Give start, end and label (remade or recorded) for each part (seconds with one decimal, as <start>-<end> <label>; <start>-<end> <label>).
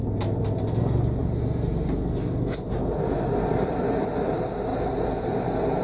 0.0-5.8 recorded